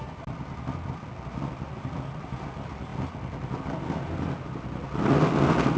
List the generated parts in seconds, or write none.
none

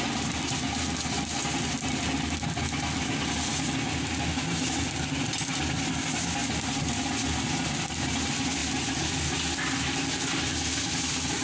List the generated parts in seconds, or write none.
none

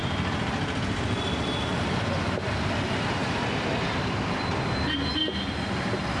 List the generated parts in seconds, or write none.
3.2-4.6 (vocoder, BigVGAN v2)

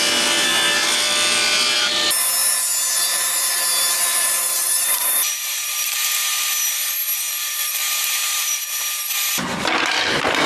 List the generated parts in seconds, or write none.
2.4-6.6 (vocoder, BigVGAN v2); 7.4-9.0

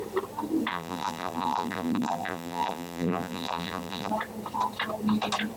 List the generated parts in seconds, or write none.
0.7-4.1 (vocoder, BigVGAN v2)